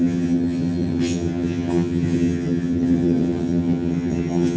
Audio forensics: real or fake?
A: fake